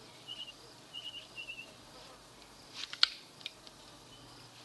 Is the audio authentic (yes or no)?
yes